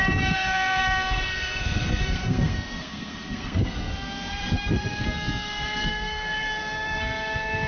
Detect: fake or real fake